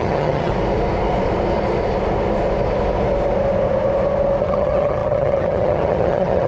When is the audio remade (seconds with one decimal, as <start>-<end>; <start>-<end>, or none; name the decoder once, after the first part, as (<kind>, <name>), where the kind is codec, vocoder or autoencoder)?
0.0-0.5 (vocoder, HiFi-GAN); 4.4-6.5